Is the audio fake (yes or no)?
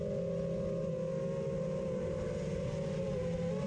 no